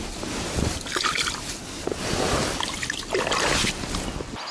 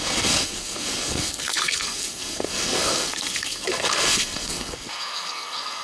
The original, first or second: first